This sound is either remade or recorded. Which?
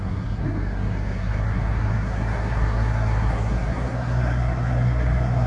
remade